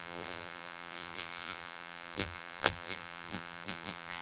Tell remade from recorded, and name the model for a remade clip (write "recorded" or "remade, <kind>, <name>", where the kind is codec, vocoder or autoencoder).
remade, vocoder, BigVGAN v2